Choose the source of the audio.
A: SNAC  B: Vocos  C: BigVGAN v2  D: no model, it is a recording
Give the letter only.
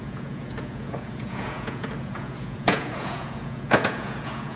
B